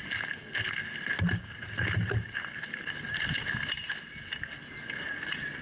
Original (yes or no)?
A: yes